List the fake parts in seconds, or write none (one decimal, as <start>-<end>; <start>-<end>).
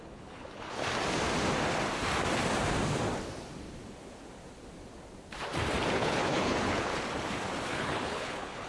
0.0-0.8; 5.9-6.9; 7.7-8.7